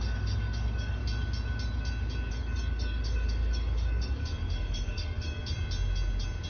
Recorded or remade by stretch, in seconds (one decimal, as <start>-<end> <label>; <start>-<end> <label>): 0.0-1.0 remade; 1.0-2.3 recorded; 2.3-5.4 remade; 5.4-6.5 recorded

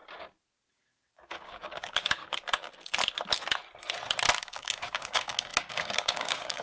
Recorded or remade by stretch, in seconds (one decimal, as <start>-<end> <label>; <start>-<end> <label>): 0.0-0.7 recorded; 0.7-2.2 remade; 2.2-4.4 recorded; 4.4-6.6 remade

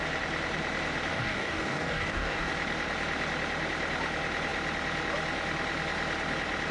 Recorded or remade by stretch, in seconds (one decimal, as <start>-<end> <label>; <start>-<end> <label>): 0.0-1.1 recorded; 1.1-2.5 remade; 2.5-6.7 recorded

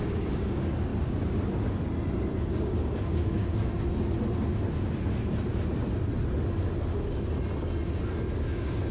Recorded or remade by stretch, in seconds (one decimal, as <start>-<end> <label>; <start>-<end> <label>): 0.0-0.9 remade; 0.9-2.5 recorded; 2.5-3.7 remade; 3.7-8.3 recorded; 8.3-8.9 remade